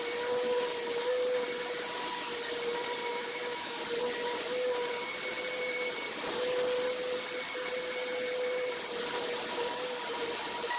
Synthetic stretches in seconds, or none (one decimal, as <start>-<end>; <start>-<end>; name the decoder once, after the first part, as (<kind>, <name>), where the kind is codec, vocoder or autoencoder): 3.1-3.8 (autoencoder, DAC-VAE)

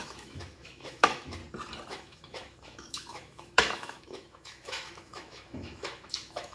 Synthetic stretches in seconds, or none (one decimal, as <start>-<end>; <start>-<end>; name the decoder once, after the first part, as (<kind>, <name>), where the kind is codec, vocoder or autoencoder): 0.0-1.4 (autoencoder, DAC-VAE); 1.9-6.5

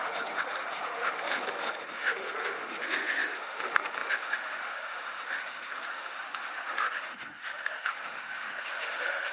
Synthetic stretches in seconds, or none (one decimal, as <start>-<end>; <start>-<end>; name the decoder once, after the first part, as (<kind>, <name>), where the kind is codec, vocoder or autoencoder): 0.0-9.3 (autoencoder, DAC-VAE)

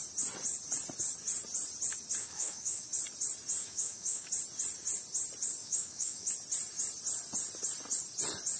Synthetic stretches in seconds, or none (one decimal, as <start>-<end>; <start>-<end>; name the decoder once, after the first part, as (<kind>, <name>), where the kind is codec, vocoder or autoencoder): 2.2-2.9 (autoencoder, DAC-VAE); 3.6-4.3; 5.6-6.3

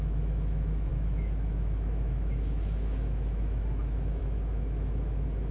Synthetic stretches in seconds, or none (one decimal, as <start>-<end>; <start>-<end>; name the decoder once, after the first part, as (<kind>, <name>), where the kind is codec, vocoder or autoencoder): 0.0-5.5 (autoencoder, DAC-VAE)